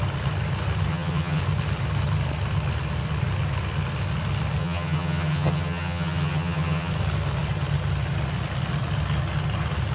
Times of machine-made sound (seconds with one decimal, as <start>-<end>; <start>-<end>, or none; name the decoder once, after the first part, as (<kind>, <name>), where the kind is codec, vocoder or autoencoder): 0.9-1.4 (vocoder, HiFi-GAN); 4.6-6.9